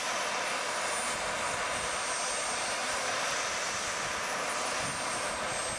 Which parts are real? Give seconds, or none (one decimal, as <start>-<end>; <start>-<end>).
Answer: 0.0-2.8; 3.6-5.8